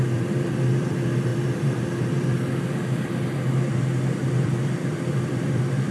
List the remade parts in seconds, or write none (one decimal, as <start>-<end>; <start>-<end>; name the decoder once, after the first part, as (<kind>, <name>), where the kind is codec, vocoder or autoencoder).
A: 0.0-5.9 (vocoder, BigVGAN v2)